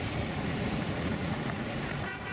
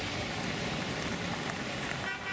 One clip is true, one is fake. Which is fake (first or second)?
first